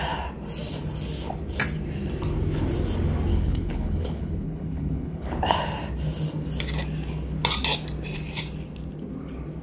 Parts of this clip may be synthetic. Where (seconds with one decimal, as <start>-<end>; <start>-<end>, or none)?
3.3-5.4